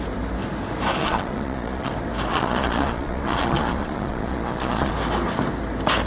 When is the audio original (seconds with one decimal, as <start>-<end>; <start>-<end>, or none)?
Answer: 0.0-1.0; 1.9-2.3; 4.9-6.1

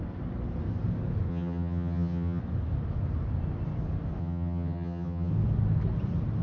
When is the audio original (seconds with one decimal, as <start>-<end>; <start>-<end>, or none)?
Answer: 0.0-1.3; 2.4-4.2; 5.3-6.4

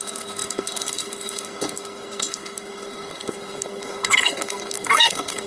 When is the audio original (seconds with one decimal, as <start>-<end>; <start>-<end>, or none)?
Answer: none